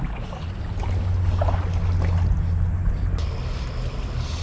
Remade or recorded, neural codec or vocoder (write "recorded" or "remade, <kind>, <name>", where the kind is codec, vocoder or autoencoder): recorded